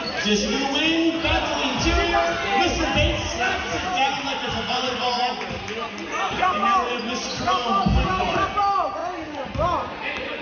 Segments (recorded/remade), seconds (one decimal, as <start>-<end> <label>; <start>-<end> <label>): 0.0-10.4 recorded